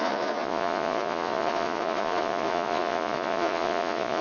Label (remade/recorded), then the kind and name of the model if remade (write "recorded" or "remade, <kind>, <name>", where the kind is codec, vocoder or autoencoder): remade, vocoder, Vocos